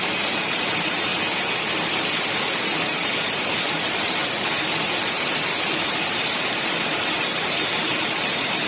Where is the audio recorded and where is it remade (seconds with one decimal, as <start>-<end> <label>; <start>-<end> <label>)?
0.0-1.1 remade; 1.1-1.9 recorded; 1.9-3.0 remade; 3.0-3.5 recorded; 3.5-8.7 remade